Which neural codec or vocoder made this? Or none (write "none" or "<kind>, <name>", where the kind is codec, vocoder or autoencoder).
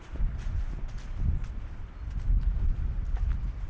none